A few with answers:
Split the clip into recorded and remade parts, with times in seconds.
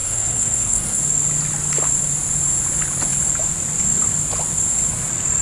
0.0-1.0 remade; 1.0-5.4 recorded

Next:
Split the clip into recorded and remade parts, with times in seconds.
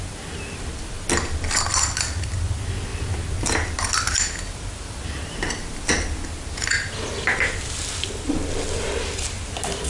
0.0-9.9 recorded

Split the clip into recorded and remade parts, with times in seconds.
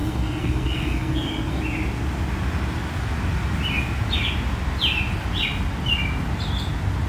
0.0-1.6 remade; 1.6-7.1 recorded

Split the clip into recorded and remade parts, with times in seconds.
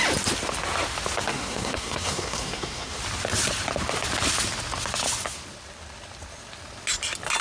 0.0-1.3 recorded; 1.3-3.0 remade; 3.0-7.4 recorded